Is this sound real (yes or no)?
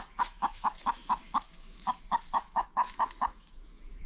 no